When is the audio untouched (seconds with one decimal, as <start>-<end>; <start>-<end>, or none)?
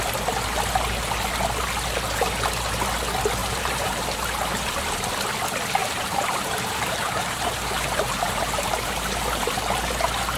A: 0.0-3.4; 4.4-5.8; 9.6-10.4